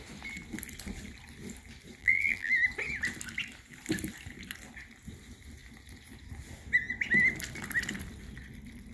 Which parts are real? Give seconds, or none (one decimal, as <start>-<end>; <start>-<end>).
0.0-2.0; 2.5-8.9